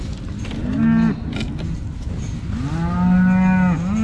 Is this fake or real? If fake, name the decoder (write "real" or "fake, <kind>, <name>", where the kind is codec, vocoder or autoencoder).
real